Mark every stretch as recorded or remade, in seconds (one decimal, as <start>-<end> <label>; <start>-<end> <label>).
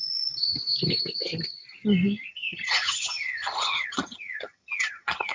0.0-2.3 recorded; 2.3-5.3 remade